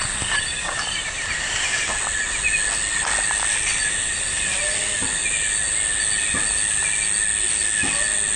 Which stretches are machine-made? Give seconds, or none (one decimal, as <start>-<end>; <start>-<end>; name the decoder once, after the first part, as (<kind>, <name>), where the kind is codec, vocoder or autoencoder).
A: none